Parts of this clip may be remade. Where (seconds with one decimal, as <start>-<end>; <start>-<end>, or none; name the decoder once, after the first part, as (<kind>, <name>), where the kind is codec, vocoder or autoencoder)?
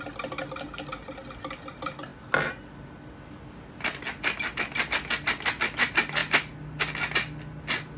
none